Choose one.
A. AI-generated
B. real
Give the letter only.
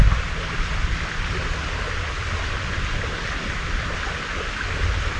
B